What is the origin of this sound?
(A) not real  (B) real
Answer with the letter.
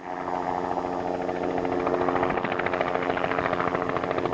B